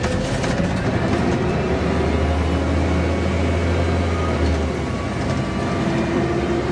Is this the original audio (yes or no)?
yes